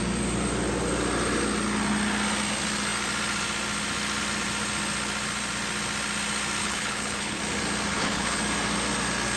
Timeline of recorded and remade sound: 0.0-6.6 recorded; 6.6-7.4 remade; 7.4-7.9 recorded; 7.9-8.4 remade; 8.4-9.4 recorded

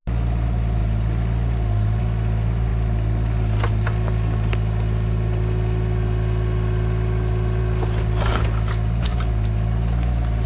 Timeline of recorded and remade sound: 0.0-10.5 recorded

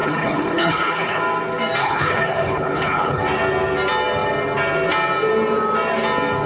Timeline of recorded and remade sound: 0.0-1.2 remade; 1.2-1.8 recorded; 1.8-3.2 remade; 3.2-6.5 recorded

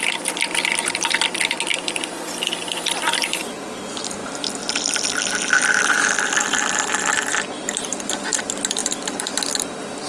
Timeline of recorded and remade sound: 0.0-10.1 recorded

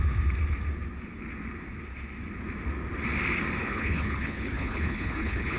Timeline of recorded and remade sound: 0.0-3.6 recorded; 3.6-5.6 remade

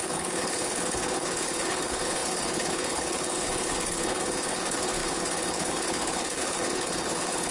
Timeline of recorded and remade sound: 0.0-7.5 remade